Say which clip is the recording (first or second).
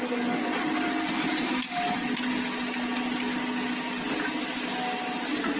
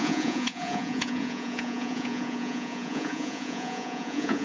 first